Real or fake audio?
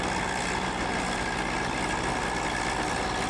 real